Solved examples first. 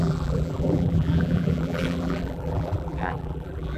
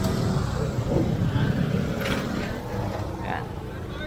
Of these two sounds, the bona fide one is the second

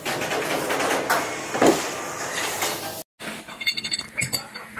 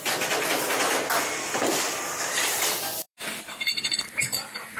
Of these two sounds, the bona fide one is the first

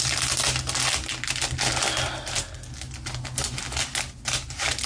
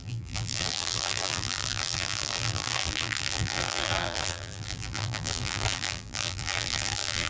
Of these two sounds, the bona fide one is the first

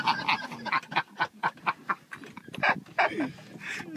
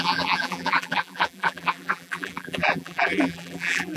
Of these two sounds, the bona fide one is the first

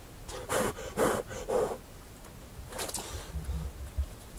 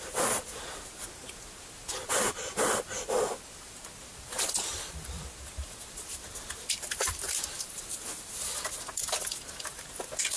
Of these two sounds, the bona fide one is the first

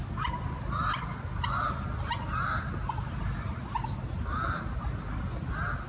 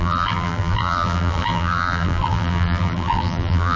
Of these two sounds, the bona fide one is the first